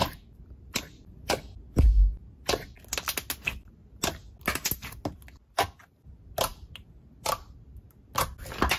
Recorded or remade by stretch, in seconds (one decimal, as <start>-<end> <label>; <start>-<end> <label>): 0.0-8.8 recorded